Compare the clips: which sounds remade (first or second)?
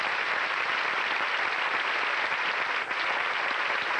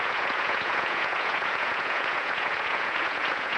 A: second